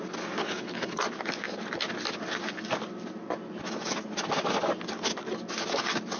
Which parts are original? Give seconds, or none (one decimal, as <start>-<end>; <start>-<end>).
0.0-0.4; 1.0-6.2